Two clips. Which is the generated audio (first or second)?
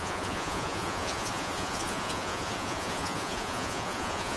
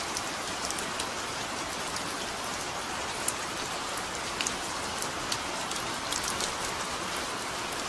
first